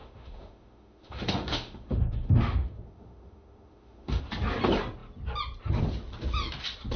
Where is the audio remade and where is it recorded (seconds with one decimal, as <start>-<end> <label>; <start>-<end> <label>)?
0.0-4.2 remade; 4.2-7.0 recorded